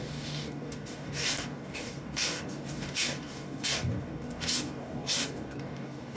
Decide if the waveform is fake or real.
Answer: fake